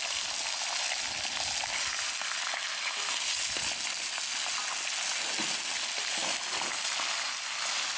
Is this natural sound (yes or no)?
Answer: yes